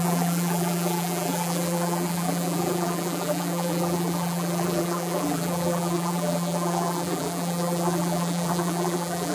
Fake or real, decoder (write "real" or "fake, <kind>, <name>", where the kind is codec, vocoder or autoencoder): fake, vocoder, BigVGAN v2